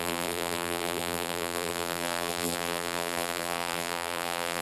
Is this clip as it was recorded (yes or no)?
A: no